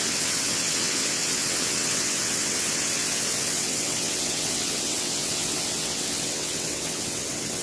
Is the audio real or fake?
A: fake